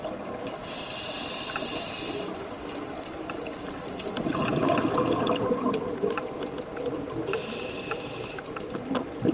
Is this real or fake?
real